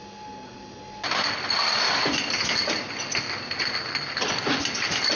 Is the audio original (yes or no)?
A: yes